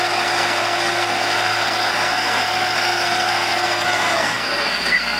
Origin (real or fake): fake